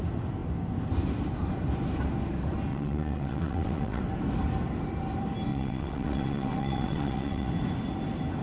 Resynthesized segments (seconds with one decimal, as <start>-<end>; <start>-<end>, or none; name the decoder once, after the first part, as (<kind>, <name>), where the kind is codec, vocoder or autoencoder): 2.7-4.0 (vocoder, WaveNeXt); 5.5-7.5